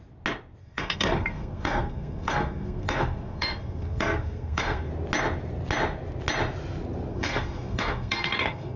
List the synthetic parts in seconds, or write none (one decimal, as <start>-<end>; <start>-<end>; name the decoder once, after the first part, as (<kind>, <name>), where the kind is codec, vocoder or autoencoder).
0.6-4.9 (codec, SNAC); 7.1-8.8